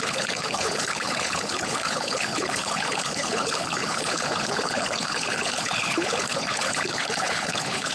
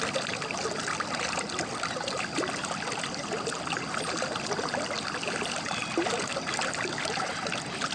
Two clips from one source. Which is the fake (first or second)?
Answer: first